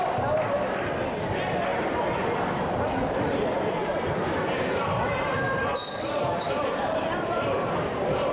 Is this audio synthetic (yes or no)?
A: yes